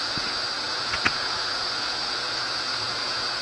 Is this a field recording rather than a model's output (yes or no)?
no